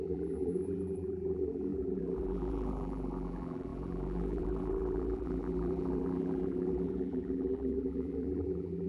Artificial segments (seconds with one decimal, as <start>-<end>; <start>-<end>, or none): 0.0-8.9